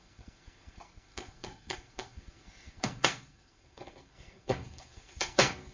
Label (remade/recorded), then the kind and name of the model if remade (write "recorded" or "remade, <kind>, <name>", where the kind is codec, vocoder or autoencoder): remade, codec, SNAC